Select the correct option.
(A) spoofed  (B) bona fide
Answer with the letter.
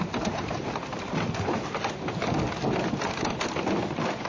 B